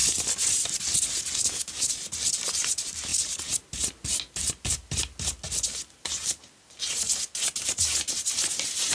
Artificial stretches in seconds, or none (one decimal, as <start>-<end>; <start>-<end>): 1.4-1.9